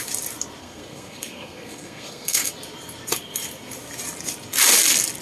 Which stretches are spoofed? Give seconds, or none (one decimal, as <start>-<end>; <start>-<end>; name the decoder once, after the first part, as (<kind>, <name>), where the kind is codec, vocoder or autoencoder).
0.6-2.5 (codec, SNAC)